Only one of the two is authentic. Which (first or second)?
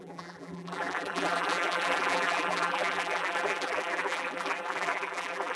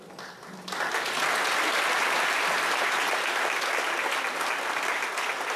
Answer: second